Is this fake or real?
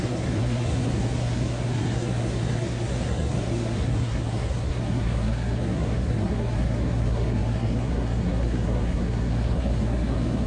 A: fake